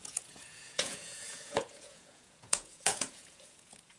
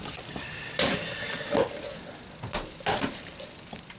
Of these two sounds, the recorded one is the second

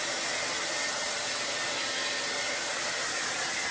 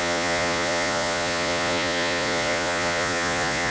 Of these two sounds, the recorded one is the first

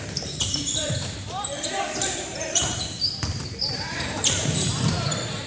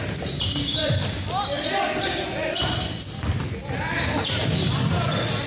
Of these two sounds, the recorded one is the second